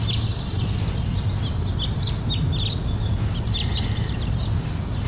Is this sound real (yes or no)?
yes